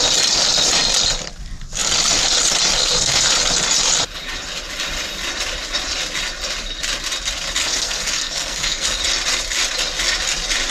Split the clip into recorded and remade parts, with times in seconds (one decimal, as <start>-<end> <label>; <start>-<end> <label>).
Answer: 0.0-2.8 recorded; 2.8-3.3 remade; 3.3-7.6 recorded; 7.6-9.0 remade; 9.0-10.7 recorded